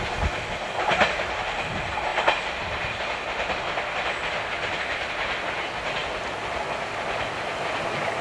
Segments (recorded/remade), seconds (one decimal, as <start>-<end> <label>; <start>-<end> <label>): 0.0-8.2 recorded